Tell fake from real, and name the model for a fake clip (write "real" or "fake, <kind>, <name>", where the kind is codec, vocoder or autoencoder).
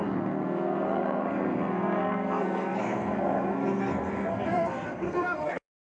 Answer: fake, codec, SNAC